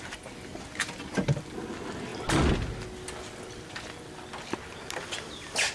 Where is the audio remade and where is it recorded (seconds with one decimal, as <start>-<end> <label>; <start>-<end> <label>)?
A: 0.0-5.7 recorded